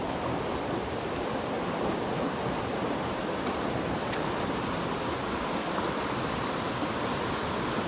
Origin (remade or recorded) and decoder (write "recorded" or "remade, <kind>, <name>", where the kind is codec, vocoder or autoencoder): recorded